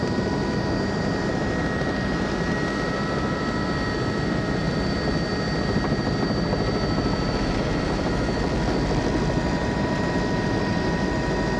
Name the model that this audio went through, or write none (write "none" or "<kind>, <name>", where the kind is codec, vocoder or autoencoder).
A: vocoder, BigVGAN v2